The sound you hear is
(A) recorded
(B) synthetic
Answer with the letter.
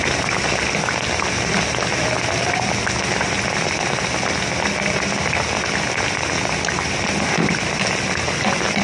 A